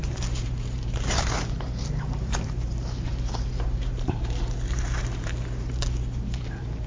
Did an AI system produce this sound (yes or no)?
yes